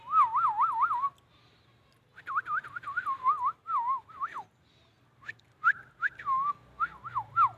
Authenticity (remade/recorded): recorded